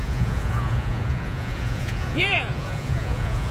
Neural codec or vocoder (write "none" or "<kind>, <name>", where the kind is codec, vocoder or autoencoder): vocoder, Vocos